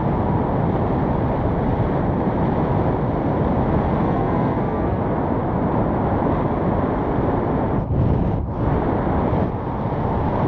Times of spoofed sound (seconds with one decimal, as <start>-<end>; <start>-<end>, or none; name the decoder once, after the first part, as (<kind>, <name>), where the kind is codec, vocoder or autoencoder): 4.0-5.0 (codec, SNAC)